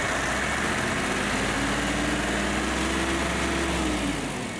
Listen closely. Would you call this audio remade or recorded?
recorded